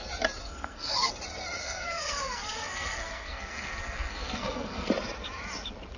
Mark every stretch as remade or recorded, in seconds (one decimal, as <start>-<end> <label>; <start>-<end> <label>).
0.0-0.4 recorded; 0.4-1.1 remade; 1.1-1.6 recorded; 1.6-4.9 remade; 4.9-6.0 recorded